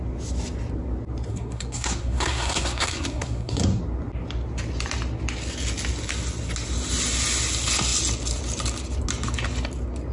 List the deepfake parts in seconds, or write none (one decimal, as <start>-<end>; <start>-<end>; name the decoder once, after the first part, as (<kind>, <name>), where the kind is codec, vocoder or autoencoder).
1.3-3.8 (codec, SNAC)

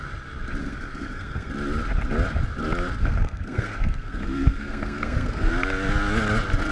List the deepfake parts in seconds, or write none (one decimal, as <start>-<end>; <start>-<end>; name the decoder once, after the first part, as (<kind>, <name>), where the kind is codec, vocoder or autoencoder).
0.6-1.5 (codec, SNAC); 3.0-5.5

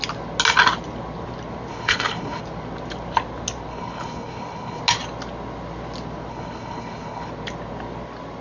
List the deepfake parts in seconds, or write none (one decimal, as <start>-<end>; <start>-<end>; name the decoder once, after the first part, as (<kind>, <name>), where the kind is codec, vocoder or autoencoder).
1.7-2.4 (codec, HILCodec); 3.7-4.8; 6.3-7.3